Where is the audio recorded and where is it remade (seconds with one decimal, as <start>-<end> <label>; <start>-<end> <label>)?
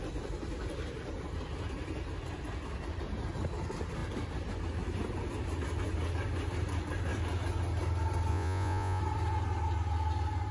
0.0-8.3 recorded; 8.3-9.0 remade; 9.0-10.5 recorded